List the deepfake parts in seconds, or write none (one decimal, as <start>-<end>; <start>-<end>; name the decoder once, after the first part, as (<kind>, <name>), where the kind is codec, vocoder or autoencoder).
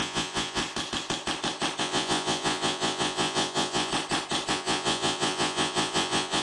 0.0-0.6 (vocoder, Vocos); 1.8-3.9; 4.5-6.4